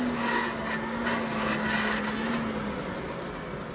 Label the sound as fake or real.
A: real